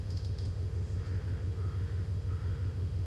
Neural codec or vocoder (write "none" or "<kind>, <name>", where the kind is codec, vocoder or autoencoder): autoencoder, DAC-VAE